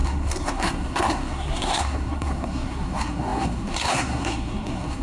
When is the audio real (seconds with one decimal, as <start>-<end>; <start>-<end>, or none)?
none